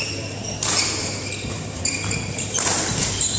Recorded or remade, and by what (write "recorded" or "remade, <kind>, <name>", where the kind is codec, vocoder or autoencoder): remade, vocoder, BigVGAN v2